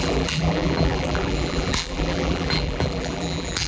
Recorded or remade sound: remade